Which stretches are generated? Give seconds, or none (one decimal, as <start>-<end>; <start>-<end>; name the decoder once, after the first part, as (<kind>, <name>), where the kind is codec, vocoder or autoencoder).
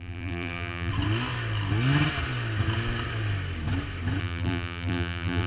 0.0-0.9 (vocoder, BigVGAN v2); 4.2-5.5